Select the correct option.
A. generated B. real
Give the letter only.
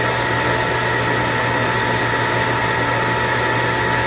B